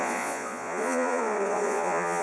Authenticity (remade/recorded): remade